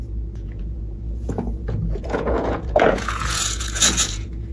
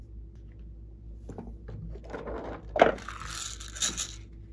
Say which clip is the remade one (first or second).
first